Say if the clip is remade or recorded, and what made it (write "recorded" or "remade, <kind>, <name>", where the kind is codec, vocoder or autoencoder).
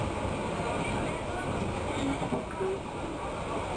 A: recorded